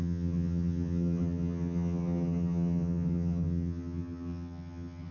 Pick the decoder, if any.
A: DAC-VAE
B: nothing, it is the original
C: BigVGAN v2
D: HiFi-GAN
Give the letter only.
D